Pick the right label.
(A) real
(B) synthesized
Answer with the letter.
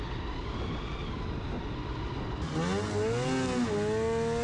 A